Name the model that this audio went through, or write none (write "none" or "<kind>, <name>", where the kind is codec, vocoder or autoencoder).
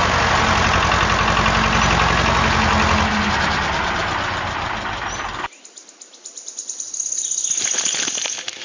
none